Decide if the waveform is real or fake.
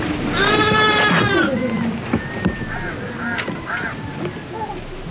real